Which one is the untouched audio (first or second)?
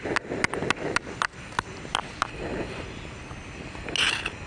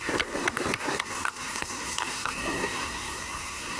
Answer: first